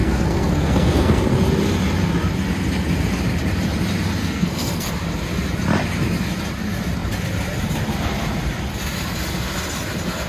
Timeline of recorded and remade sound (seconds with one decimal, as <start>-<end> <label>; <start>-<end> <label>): 0.0-1.2 remade; 1.2-4.2 recorded; 4.2-4.9 remade; 4.9-10.3 recorded